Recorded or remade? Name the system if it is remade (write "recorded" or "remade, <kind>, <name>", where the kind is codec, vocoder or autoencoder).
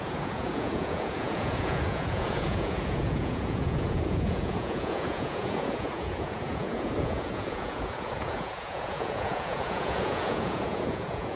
remade, vocoder, Vocos